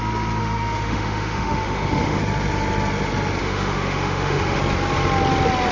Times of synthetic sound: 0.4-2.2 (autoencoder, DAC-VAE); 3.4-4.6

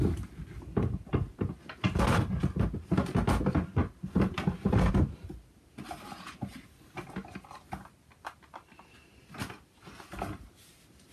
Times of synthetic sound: none

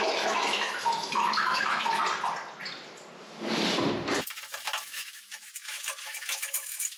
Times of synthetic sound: 0.0-2.0 (autoencoder, DAC-VAE); 4.8-7.0

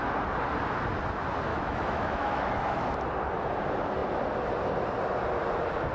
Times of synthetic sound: 1.5-2.9 (autoencoder, DAC-VAE)